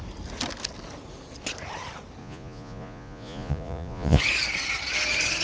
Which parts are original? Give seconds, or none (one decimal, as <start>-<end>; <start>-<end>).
0.0-2.2; 4.2-5.4